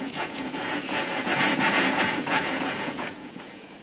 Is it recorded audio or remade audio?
remade